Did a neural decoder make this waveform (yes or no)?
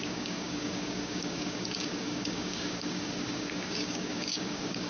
yes